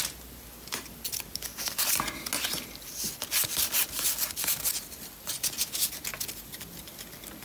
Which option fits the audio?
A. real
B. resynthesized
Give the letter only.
A